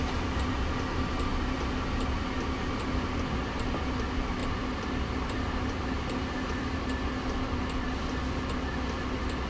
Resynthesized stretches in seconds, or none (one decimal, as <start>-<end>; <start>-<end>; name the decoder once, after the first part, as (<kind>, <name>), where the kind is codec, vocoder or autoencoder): none